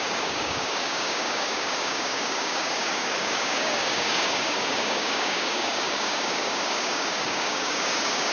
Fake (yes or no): yes